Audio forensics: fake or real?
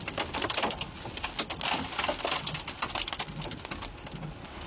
real